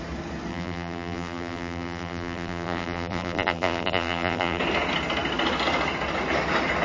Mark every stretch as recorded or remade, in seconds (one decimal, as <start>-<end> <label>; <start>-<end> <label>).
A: 0.0-0.5 recorded; 0.5-4.6 remade; 4.6-6.8 recorded